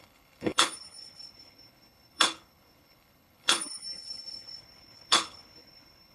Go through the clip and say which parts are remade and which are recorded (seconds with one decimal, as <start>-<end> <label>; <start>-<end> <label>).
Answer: 0.0-6.1 remade